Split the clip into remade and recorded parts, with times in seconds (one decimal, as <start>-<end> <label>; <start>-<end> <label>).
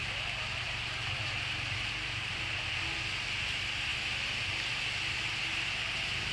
0.0-3.4 remade; 3.4-6.3 recorded